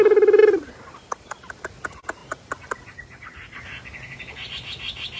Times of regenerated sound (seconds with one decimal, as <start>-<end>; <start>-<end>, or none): 0.4-1.5